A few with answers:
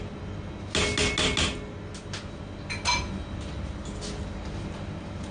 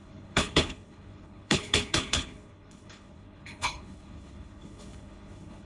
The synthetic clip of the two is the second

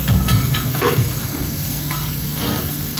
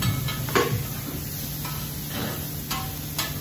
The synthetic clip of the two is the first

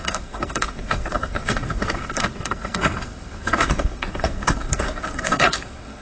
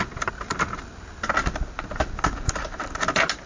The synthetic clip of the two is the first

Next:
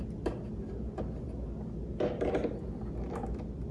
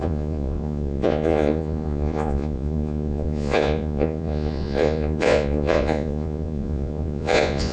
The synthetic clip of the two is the second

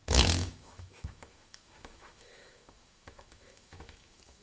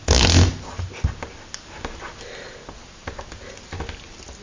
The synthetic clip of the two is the first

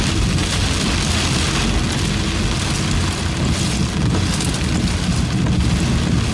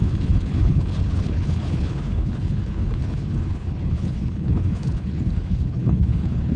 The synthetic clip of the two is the second